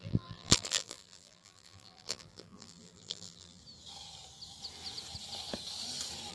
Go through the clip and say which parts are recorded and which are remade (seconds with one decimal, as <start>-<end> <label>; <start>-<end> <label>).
0.0-3.6 remade; 3.6-6.3 recorded